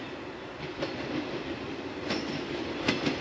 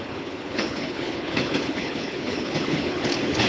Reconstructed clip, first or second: second